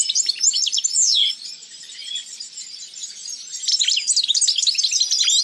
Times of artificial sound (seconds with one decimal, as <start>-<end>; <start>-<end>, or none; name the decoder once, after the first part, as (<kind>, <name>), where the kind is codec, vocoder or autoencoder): none